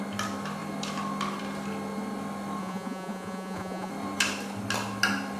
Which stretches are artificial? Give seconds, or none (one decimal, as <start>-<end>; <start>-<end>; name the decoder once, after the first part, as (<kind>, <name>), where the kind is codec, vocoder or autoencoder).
2.6-3.9 (vocoder, Vocos)